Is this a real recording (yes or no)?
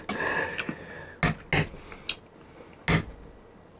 yes